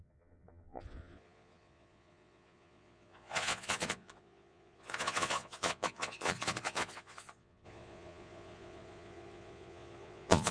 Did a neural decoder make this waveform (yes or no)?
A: yes